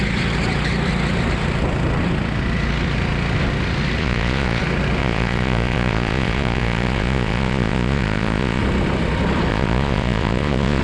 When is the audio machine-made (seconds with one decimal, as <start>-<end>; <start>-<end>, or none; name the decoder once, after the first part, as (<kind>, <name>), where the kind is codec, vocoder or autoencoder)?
4.0-4.6 (vocoder, Vocos); 5.0-8.6; 9.5-10.8